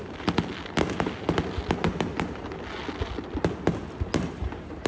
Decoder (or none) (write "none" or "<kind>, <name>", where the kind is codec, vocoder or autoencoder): none